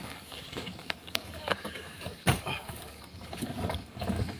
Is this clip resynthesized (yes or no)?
yes